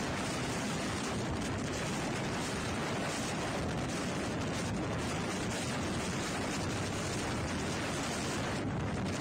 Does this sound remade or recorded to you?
recorded